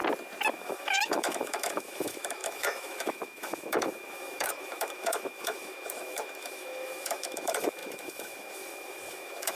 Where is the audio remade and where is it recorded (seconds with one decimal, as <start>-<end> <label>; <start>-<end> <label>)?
0.0-0.5 recorded; 0.5-9.5 remade